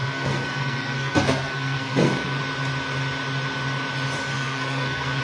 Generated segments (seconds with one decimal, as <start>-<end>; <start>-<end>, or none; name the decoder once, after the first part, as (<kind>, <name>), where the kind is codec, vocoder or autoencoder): 0.0-2.4 (codec, SNAC); 4.3-5.2